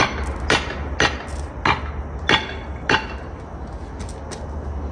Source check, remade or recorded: recorded